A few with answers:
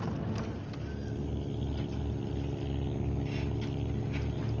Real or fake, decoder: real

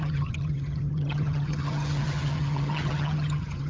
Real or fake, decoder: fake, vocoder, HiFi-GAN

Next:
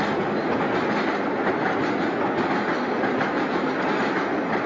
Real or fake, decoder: real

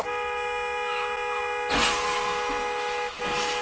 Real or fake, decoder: real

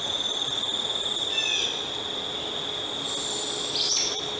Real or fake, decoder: real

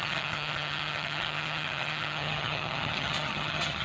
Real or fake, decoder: fake, vocoder, HiFi-GAN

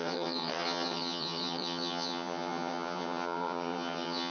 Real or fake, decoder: fake, vocoder, HiFi-GAN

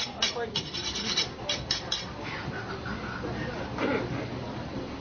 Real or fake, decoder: real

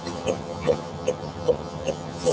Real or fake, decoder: fake, vocoder, HiFi-GAN